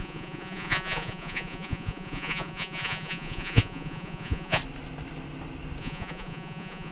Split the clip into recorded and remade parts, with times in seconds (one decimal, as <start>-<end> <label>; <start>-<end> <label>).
0.0-4.6 remade; 4.6-5.8 recorded; 5.8-6.9 remade